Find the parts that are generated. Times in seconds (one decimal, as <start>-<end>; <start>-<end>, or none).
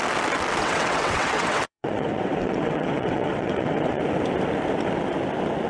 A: 0.6-4.0